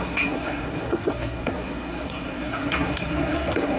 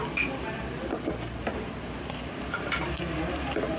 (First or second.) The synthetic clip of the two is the first